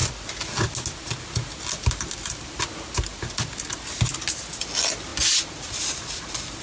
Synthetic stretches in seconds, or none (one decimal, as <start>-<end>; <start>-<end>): none